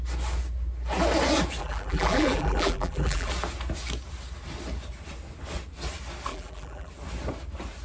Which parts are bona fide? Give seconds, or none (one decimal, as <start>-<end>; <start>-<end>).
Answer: 0.0-1.6; 3.3-6.3; 6.9-7.8

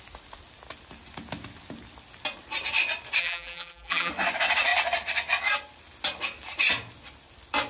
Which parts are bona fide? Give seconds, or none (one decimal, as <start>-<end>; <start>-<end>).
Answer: 0.0-3.2; 4.1-7.7

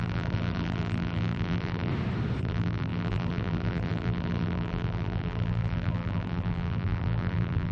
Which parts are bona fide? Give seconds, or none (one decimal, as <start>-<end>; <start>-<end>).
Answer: 1.9-2.4

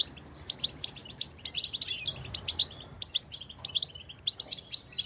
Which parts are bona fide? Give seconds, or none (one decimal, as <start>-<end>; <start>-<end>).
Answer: 0.0-1.0; 1.7-2.9; 3.5-5.1

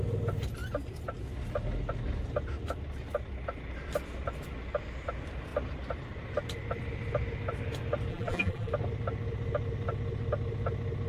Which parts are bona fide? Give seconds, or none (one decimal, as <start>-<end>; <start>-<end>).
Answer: 0.0-8.1; 8.7-11.1